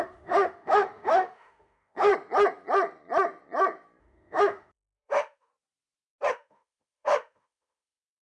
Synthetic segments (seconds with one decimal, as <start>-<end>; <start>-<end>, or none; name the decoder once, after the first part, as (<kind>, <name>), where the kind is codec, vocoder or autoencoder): 0.0-2.1 (autoencoder, DAC-VAE); 4.0-5.5; 6.3-8.2